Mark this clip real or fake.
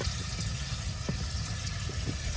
real